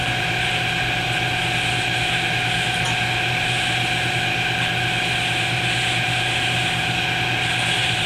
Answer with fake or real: real